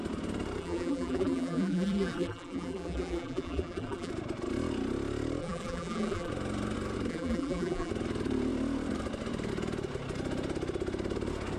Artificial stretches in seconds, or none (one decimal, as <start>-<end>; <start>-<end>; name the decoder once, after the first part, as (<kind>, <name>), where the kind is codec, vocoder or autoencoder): 0.6-4.1 (vocoder, BigVGAN v2); 5.4-6.3; 7.1-7.9